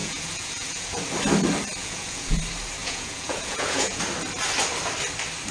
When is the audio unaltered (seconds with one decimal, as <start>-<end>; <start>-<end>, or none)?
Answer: 1.0-1.8; 2.4-2.8; 4.0-5.5